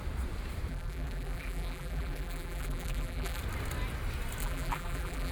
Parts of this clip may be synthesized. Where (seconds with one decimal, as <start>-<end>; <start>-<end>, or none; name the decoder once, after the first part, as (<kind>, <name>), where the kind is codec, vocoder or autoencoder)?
0.7-3.4 (vocoder, BigVGAN v2); 4.4-5.3